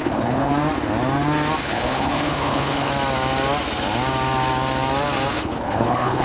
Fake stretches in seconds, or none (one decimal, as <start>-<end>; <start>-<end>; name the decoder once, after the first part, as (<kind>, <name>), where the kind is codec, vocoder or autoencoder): 0.0-0.5 (codec, HILCodec); 1.6-2.9; 5.3-6.2

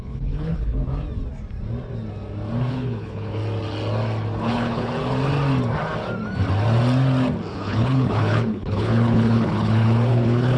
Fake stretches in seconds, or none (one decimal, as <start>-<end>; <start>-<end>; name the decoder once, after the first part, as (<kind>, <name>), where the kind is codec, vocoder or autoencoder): 0.0-0.8 (codec, HILCodec); 2.7-3.4; 4.4-4.9; 7.5-10.6

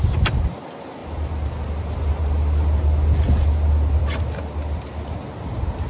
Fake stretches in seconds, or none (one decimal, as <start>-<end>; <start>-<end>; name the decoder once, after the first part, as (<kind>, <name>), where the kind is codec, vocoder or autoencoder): none

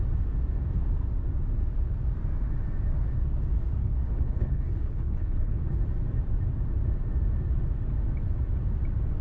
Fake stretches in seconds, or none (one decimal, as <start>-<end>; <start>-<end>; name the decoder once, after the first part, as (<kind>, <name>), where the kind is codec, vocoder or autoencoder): 3.8-5.7 (codec, HILCodec)

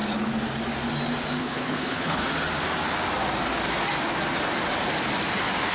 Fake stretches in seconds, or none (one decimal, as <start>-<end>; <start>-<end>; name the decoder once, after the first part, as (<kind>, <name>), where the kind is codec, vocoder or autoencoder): 1.4-2.2 (codec, HILCodec)

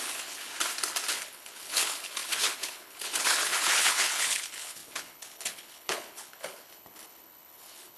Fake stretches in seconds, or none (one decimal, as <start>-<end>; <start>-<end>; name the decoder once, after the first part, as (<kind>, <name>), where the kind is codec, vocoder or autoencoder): 0.0-0.5 (codec, HILCodec); 1.1-8.0

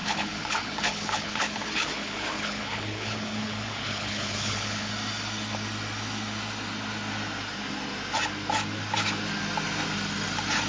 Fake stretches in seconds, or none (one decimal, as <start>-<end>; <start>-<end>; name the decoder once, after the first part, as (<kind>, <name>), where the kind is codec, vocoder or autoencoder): 0.0-4.9 (codec, HILCodec)